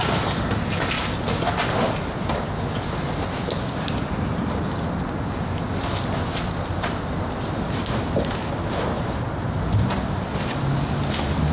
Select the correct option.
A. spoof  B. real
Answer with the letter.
B